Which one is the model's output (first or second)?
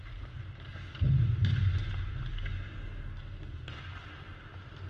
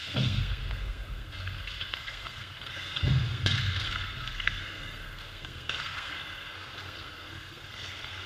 second